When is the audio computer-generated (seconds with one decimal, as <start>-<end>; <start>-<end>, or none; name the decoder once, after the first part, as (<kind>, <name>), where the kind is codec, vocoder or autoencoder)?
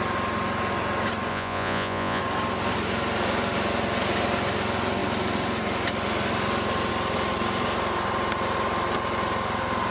1.3-2.2 (vocoder, Vocos)